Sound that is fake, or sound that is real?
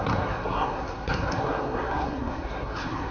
fake